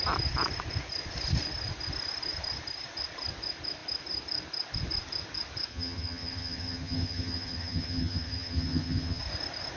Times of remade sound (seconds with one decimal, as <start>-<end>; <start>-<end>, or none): 5.7-9.2

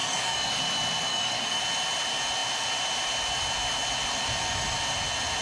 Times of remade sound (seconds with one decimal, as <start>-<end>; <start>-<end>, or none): 0.0-0.6; 1.1-1.6

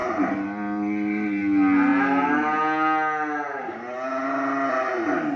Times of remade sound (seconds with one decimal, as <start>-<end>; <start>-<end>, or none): 0.0-1.4

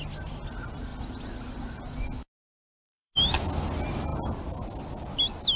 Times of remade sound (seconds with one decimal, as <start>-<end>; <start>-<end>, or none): 0.9-3.1

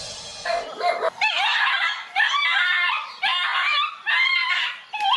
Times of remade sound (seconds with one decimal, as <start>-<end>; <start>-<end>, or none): none

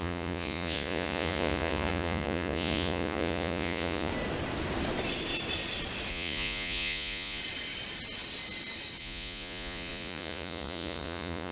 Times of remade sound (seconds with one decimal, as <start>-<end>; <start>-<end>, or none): 0.0-4.1; 6.1-7.4; 9.0-11.5